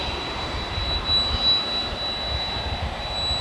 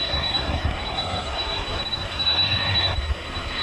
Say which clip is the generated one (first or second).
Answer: second